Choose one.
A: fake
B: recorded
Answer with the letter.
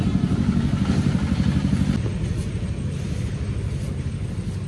B